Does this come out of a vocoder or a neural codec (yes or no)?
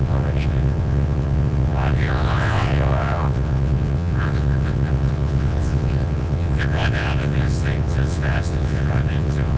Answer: yes